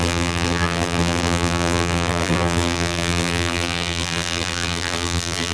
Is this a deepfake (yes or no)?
yes